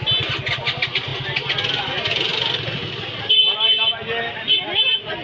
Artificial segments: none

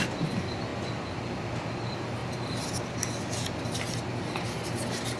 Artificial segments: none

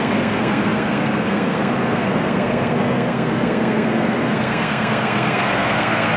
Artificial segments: 0.0-6.2 (codec, SNAC)

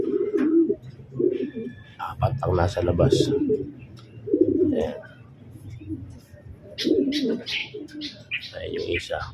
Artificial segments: none

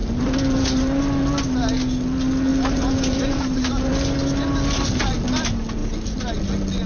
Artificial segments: 0.0-1.0 (vocoder, BigVGAN v2); 2.5-3.9